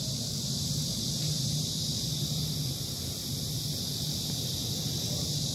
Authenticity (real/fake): real